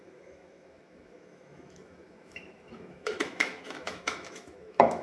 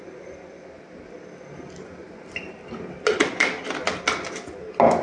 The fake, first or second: first